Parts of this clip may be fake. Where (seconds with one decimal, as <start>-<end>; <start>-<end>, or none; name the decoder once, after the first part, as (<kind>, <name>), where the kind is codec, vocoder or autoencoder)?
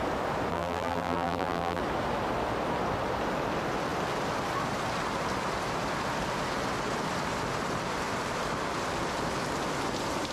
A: 0.5-1.8 (vocoder, BigVGAN v2)